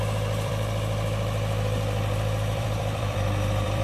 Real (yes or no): no